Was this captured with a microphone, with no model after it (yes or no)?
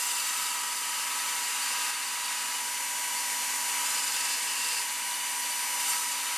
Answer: yes